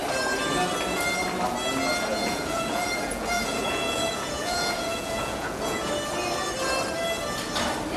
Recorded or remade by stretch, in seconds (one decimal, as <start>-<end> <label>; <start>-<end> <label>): 0.0-2.1 recorded; 2.1-5.9 remade; 5.9-8.0 recorded